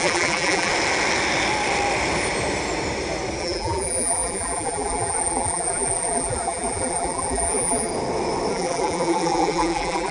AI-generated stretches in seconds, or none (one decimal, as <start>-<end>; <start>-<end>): 0.0-0.7; 3.4-7.9; 8.5-10.1